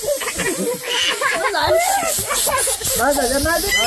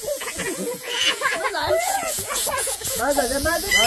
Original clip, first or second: first